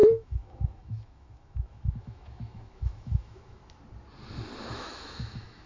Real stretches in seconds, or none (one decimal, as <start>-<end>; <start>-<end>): 3.6-4.7